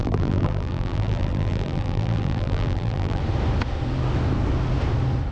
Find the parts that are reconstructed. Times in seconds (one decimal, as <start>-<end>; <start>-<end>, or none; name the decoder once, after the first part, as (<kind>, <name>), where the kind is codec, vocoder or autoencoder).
0.0-3.2 (vocoder, BigVGAN v2)